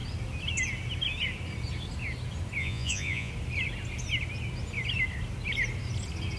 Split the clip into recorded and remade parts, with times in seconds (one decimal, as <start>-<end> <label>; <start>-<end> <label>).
0.0-2.6 recorded; 2.6-3.3 remade; 3.3-6.4 recorded